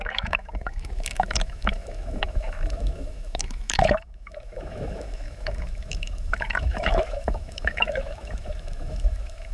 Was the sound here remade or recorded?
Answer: remade